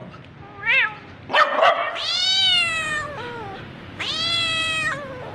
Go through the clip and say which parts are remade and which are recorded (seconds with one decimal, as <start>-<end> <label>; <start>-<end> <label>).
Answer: 0.0-1.1 recorded; 1.1-5.3 remade